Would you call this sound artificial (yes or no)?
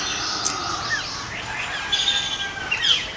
no